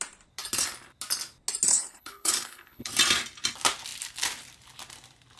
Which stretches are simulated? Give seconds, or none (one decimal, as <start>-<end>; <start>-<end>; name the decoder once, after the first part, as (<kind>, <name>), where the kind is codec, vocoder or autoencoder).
1.7-2.9 (codec, HILCodec)